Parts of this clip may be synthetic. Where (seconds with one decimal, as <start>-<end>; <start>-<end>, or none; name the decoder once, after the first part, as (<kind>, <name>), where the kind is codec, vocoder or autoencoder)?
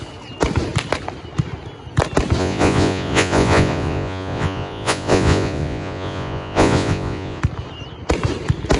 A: 2.4-7.4 (vocoder, Vocos)